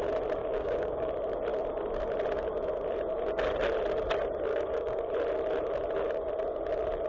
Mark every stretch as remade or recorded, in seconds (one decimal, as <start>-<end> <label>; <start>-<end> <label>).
0.0-0.4 recorded; 0.4-1.1 remade; 1.1-4.5 recorded; 4.5-5.1 remade; 5.1-7.1 recorded